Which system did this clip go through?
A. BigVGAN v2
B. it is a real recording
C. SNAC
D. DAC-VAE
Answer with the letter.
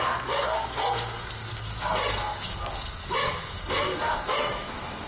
C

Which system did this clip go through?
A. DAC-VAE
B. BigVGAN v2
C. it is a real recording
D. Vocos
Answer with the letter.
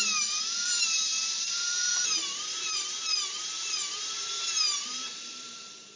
B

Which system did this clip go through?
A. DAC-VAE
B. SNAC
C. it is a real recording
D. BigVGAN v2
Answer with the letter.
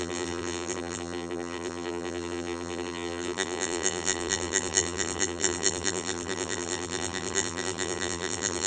D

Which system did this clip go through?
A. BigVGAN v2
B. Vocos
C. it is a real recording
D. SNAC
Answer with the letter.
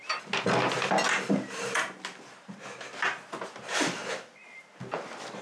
C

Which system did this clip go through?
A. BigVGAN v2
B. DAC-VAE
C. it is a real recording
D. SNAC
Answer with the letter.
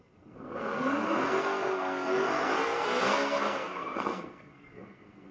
D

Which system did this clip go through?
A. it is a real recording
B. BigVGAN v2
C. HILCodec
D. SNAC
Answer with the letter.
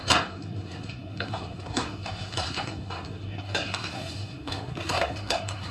D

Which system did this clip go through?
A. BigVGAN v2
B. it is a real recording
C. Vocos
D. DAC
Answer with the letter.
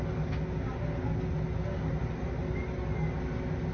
B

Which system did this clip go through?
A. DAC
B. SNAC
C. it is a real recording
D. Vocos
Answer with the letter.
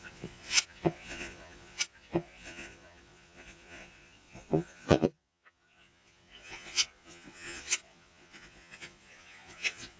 D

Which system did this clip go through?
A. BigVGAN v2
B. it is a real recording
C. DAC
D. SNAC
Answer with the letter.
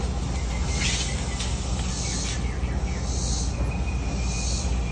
B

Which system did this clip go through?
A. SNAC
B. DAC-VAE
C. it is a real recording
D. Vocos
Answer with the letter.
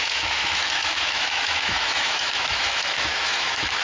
B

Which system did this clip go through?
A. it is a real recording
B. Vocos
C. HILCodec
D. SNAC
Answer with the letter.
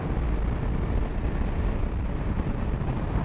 A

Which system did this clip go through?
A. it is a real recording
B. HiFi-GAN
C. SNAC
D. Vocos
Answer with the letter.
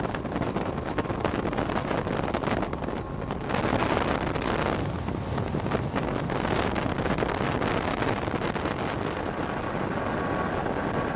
A